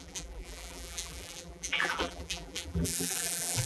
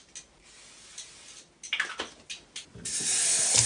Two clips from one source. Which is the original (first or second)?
second